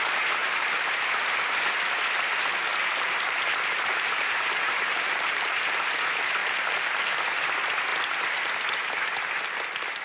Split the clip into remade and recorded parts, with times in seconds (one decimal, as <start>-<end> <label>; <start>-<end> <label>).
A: 0.0-0.4 recorded; 0.4-1.3 remade; 1.3-2.7 recorded; 2.7-5.9 remade; 5.9-6.4 recorded; 6.4-7.0 remade; 7.0-10.0 recorded